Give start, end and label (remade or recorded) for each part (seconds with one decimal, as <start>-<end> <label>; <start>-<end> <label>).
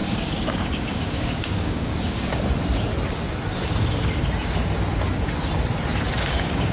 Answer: 0.0-2.3 remade; 2.3-6.2 recorded; 6.2-6.7 remade